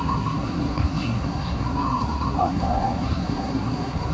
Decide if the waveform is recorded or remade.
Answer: remade